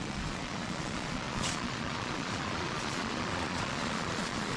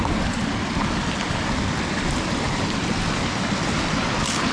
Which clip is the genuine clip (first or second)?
second